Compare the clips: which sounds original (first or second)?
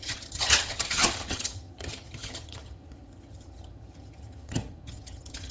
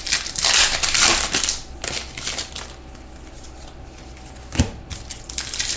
second